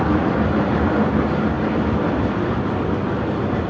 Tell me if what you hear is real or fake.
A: real